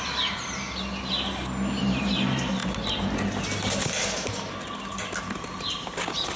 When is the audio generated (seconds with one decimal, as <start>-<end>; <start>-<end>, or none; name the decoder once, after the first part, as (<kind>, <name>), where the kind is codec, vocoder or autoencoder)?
none